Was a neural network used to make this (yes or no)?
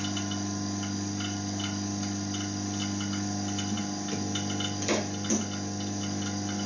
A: no